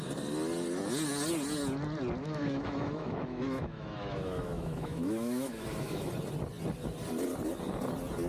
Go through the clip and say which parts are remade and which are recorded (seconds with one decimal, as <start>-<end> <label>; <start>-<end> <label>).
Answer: 0.0-2.2 recorded; 2.2-6.1 remade; 6.1-8.3 recorded